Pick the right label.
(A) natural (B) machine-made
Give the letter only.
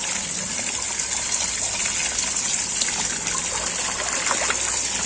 A